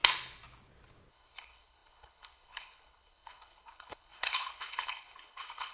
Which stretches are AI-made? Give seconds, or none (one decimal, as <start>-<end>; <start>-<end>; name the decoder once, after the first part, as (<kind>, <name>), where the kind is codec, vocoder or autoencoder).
1.1-5.7 (codec, HILCodec)